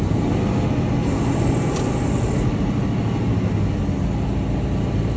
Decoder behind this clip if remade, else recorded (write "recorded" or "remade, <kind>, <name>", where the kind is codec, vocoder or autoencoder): recorded